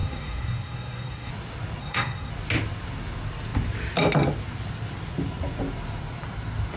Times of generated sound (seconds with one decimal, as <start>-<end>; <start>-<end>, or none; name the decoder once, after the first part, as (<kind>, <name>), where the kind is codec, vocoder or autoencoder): 0.0-1.3 (codec, SNAC); 1.8-2.3